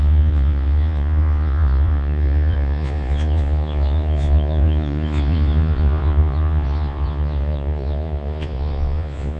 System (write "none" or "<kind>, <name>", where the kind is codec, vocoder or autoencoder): vocoder, Vocos